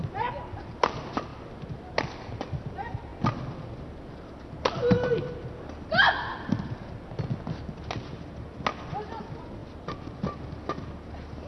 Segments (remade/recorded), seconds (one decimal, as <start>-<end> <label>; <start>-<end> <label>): 0.0-11.5 recorded